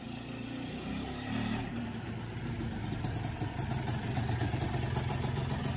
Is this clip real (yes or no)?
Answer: yes